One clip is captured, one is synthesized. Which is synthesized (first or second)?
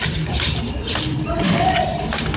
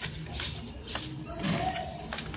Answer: first